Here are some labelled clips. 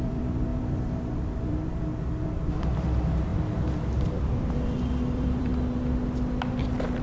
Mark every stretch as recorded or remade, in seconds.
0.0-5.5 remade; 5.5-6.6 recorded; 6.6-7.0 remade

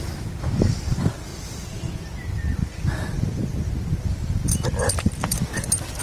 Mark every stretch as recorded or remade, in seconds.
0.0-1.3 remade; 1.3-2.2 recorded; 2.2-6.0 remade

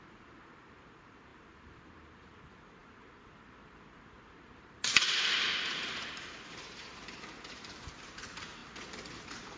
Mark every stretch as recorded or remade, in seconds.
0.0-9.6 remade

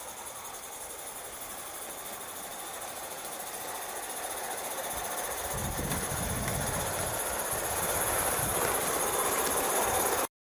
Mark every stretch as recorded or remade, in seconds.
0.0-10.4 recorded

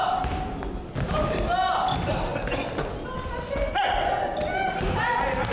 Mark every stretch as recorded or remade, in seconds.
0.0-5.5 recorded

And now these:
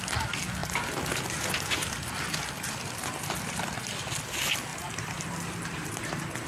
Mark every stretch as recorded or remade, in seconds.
0.0-4.7 recorded; 4.7-6.1 remade; 6.1-6.5 recorded